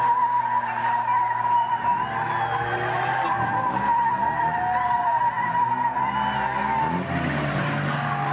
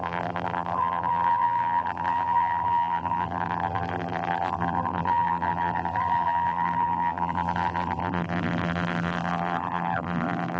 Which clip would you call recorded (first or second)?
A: first